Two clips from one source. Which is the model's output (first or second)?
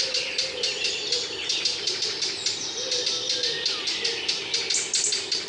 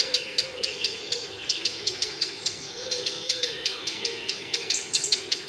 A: second